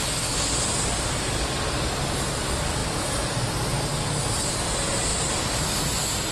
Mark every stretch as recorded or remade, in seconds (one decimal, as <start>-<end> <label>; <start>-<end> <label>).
0.0-6.3 recorded